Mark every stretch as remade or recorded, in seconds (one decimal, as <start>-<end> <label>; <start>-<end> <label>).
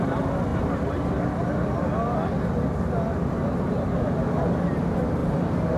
0.0-5.8 recorded